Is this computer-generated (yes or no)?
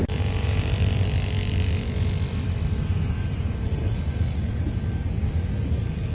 no